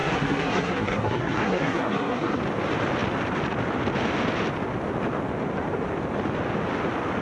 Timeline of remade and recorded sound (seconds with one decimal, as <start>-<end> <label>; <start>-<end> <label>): 0.0-2.4 remade; 2.4-7.2 recorded